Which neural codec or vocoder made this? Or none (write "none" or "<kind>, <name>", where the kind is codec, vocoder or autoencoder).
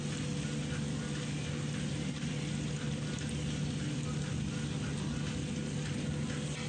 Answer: none